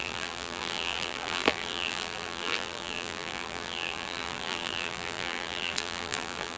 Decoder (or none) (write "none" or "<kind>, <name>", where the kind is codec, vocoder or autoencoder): vocoder, BigVGAN v2